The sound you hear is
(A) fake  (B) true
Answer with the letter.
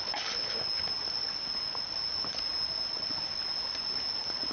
B